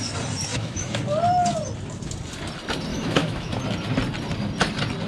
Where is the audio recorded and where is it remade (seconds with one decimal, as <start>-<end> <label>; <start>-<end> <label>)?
0.0-0.5 recorded; 0.5-1.0 remade; 1.0-2.9 recorded; 2.9-3.6 remade; 3.6-5.1 recorded